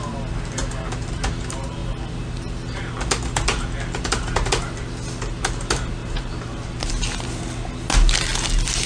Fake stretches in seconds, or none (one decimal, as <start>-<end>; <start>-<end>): 6.0-6.9